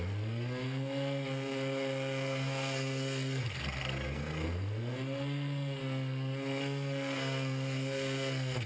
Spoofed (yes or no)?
yes